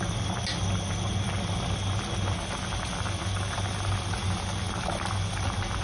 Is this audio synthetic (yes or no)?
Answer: no